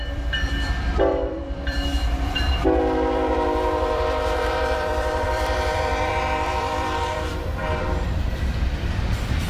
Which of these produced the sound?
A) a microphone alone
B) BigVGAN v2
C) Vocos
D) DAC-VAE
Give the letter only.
B